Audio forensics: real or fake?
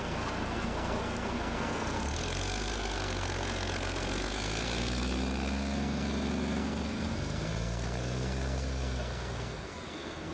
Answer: fake